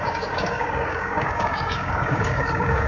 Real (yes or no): no